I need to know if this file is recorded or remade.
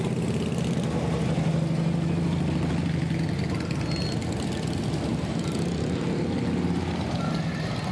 recorded